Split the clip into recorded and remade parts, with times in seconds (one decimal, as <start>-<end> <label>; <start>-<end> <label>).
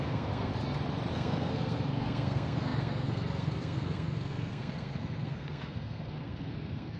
0.0-0.5 remade; 0.5-1.1 recorded; 1.1-7.0 remade